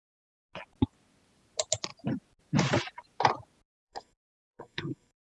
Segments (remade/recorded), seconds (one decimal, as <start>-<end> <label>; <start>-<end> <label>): 0.0-3.8 recorded; 3.8-5.3 remade